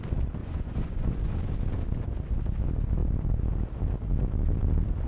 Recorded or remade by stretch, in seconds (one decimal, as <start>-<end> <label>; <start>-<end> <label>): 0.0-0.4 recorded; 0.4-1.2 remade; 1.2-5.1 recorded